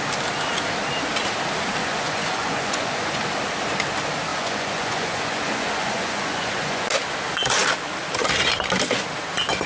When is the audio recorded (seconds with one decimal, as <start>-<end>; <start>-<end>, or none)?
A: 0.0-1.8; 3.2-4.3; 6.9-9.7